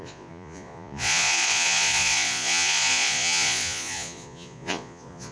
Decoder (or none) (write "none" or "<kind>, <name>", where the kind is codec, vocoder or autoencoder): vocoder, Vocos